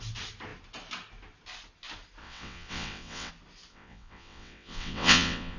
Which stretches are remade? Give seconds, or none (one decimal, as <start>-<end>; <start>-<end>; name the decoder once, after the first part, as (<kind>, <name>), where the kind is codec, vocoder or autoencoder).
2.2-3.3 (vocoder, WaveNeXt); 3.7-5.6